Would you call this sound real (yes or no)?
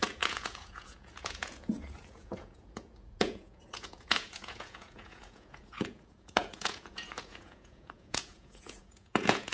no